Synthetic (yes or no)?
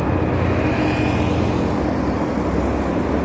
no